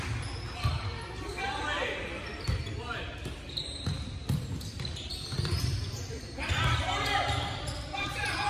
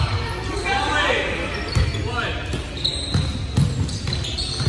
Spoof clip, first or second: first